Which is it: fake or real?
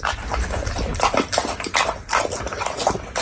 real